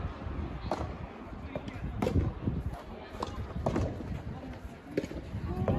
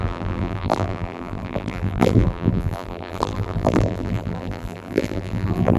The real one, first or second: first